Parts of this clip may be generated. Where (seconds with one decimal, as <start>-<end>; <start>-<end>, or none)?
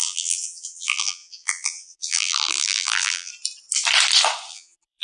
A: 0.0-3.3; 4.5-5.0